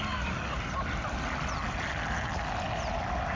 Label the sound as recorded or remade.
recorded